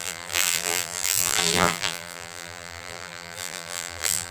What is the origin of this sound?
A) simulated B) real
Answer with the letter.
A